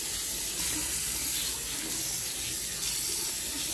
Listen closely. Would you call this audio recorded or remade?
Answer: recorded